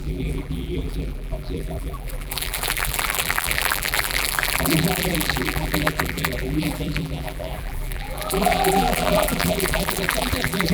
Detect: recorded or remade remade